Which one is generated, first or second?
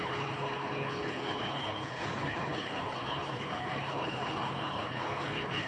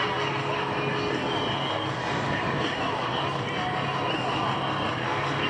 first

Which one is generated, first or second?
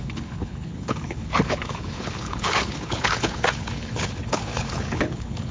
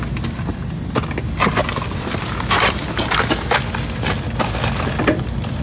first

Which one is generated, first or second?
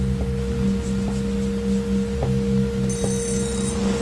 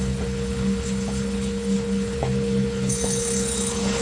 second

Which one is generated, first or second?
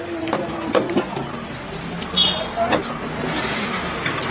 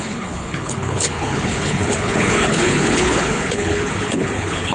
second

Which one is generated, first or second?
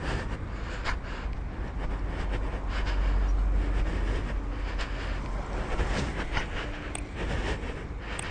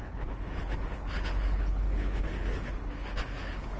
second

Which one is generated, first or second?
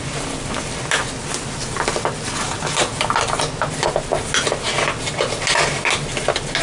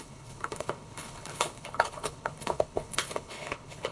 second